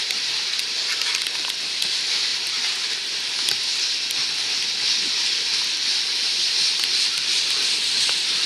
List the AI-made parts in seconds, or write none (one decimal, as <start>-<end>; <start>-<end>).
0.0-2.3; 5.1-8.5